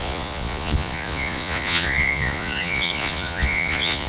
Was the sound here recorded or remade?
remade